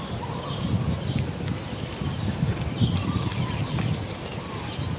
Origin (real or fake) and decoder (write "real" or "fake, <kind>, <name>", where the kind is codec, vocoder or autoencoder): real